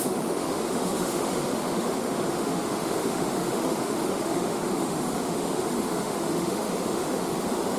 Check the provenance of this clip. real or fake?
fake